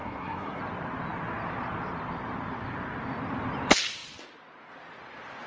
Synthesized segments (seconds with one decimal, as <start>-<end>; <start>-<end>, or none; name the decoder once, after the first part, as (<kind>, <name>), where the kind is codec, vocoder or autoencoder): 0.0-0.6 (codec, SNAC)